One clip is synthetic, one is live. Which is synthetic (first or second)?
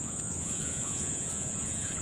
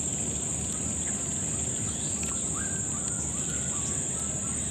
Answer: first